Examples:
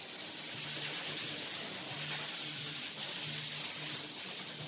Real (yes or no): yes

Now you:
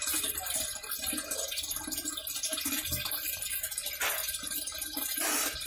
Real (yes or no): yes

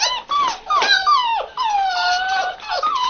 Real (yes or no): yes